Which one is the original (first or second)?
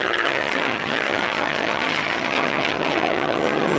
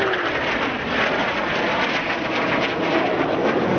second